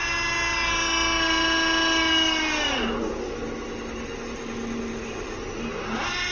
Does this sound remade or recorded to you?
recorded